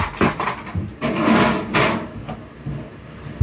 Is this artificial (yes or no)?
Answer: no